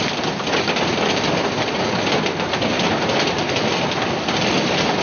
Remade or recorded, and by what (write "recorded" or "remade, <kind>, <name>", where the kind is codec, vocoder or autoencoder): recorded